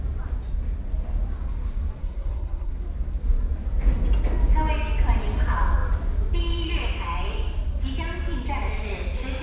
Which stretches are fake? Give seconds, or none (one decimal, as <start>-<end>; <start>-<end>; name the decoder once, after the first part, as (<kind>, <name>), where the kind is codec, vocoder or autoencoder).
2.0-2.7 (codec, SNAC)